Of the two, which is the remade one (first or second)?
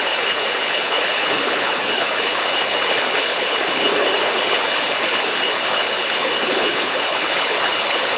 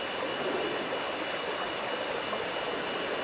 first